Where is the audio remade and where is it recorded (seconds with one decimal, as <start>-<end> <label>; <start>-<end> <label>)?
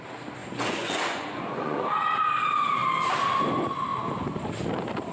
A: 0.0-0.4 recorded; 0.4-2.3 remade; 2.3-5.1 recorded